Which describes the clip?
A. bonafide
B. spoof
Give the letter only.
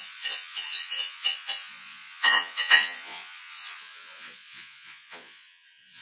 B